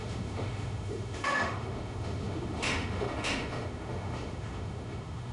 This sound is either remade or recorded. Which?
remade